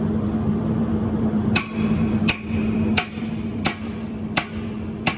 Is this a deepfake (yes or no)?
yes